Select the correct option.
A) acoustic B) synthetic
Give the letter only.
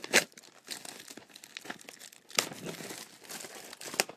A